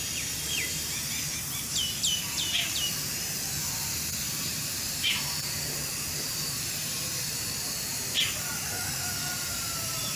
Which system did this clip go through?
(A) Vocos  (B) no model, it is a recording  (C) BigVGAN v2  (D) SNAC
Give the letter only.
C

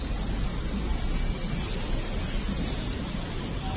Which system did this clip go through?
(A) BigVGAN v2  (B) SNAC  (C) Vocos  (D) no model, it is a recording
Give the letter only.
D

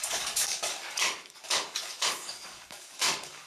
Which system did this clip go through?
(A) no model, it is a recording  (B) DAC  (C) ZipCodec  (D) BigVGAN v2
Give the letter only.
B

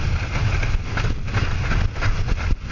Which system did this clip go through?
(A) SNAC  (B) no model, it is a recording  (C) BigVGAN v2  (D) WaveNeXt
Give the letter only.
B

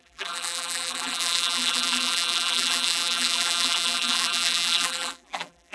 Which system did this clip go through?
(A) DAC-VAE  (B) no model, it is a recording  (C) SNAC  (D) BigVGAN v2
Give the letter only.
D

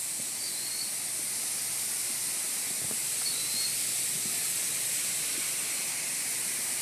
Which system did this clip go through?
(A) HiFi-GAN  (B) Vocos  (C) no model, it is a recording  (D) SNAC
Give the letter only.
C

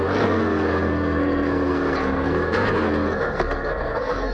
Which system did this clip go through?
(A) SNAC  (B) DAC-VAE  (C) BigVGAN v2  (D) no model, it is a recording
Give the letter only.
A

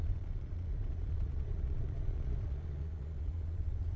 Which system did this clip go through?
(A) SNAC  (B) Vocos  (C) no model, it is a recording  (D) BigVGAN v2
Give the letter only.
B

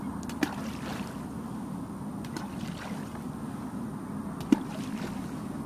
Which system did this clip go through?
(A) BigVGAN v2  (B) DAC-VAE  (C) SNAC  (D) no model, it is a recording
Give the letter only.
D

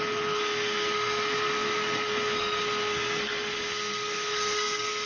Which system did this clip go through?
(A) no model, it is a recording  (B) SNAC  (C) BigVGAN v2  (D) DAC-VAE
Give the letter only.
B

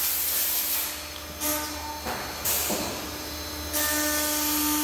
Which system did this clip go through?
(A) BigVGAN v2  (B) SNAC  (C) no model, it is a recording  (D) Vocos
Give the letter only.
C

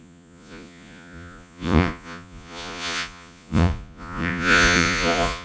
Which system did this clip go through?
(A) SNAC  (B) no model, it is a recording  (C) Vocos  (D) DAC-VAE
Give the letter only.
C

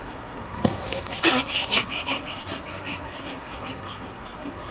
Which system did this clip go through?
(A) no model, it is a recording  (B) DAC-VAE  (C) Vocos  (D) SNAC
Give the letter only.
D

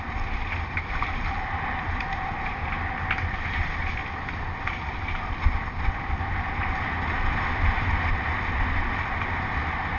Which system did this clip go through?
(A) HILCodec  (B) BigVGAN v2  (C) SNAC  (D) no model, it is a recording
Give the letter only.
D